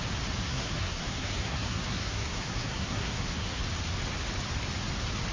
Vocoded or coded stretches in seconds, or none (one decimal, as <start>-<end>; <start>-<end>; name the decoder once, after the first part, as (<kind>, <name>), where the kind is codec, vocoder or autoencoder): 0.4-3.6 (codec, SNAC)